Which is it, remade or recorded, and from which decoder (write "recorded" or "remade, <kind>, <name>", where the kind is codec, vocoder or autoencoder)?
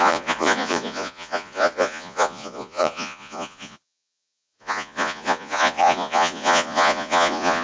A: remade, vocoder, Vocos